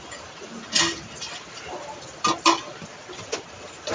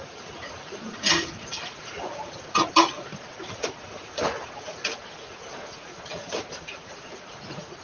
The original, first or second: first